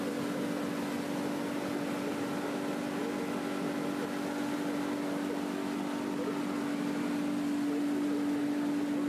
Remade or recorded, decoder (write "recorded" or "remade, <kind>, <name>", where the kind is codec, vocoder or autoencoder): recorded